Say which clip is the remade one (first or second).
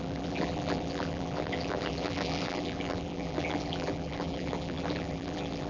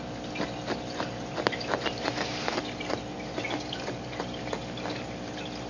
first